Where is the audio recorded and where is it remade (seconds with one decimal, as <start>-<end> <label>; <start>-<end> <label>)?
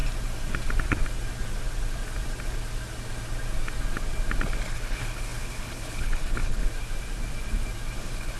0.0-4.7 recorded; 4.7-6.6 remade; 6.6-8.0 recorded; 8.0-8.4 remade